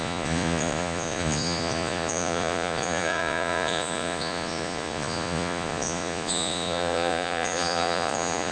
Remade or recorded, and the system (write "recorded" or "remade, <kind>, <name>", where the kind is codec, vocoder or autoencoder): remade, vocoder, Vocos